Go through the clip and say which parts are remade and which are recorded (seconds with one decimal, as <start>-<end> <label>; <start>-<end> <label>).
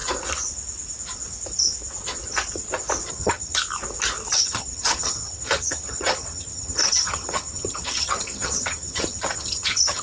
0.0-3.1 recorded; 3.1-3.6 remade; 3.6-4.3 recorded; 4.3-10.0 remade